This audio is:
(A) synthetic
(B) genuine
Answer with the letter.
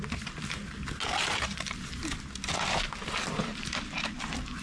B